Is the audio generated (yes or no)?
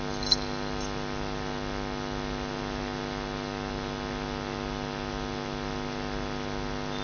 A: no